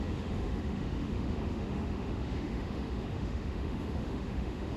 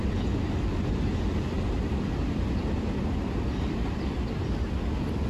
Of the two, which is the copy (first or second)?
first